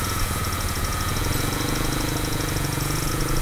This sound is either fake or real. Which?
fake